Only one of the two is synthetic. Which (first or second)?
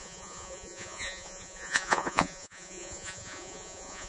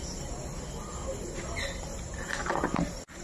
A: first